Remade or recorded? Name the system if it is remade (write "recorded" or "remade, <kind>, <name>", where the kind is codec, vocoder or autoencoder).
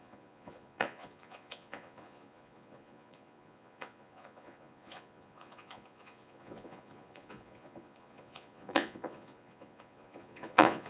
remade, vocoder, Vocos